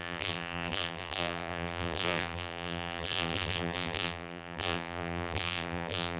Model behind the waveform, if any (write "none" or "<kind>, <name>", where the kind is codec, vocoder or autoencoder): vocoder, BigVGAN v2